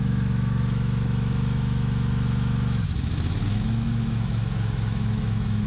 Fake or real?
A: fake